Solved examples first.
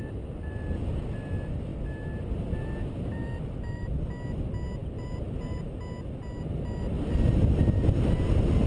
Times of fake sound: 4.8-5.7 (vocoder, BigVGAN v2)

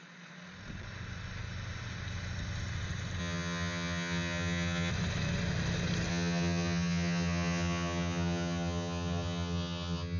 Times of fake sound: 3.2-4.9 (vocoder, HiFi-GAN); 6.1-10.2

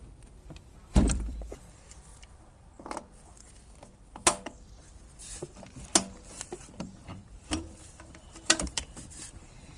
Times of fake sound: 0.9-2.1 (vocoder, BigVGAN v2); 6.8-9.8

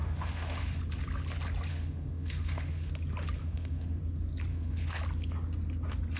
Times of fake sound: 0.0-0.8 (autoencoder, DAC-VAE); 1.7-2.9; 3.4-4.0; 4.5-5.0

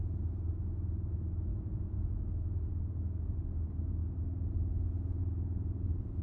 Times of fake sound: 1.5-2.1 (vocoder, Vocos)

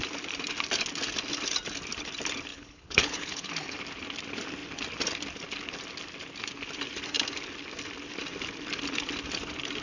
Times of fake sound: 2.5-3.5 (codec, HILCodec)

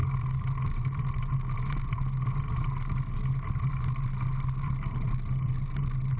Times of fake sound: none